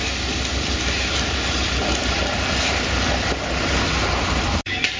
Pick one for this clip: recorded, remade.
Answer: recorded